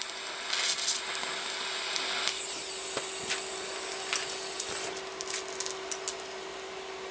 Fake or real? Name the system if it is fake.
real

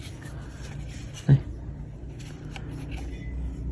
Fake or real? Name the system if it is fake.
real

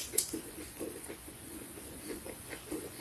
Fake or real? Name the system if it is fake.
fake, vocoder, Vocos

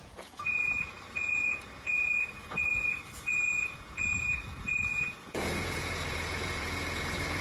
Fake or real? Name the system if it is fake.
fake, vocoder, Vocos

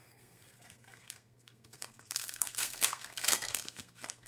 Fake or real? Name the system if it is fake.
fake, codec, SNAC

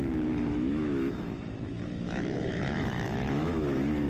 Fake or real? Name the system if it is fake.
fake, autoencoder, DAC-VAE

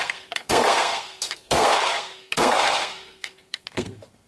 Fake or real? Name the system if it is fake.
fake, codec, SNAC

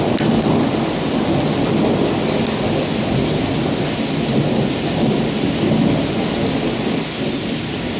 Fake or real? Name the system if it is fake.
real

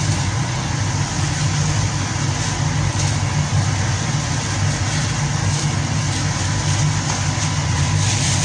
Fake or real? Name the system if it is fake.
real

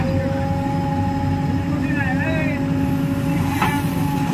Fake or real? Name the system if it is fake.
real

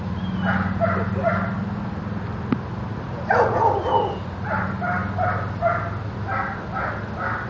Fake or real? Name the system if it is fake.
real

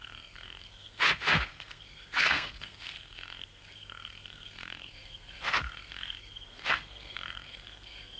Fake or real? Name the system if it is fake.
fake, codec, SNAC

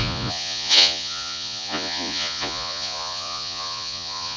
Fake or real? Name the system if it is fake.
fake, vocoder, Vocos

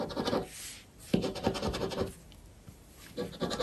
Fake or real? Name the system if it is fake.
real